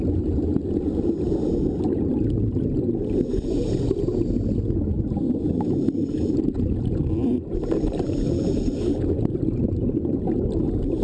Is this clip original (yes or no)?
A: yes